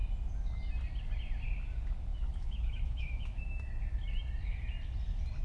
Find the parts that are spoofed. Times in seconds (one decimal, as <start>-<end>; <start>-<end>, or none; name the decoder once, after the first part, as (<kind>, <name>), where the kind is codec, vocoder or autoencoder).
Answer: 2.1-3.7 (autoencoder, DAC-VAE)